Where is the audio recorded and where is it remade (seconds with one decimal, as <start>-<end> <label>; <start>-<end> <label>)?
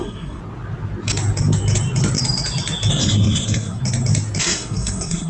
0.0-0.4 remade; 0.4-2.9 recorded; 2.9-3.8 remade; 3.8-4.4 recorded; 4.4-5.3 remade